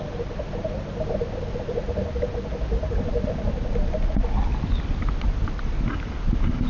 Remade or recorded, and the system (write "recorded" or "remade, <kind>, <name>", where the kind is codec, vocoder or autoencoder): recorded